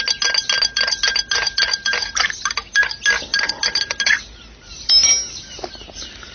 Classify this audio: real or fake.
real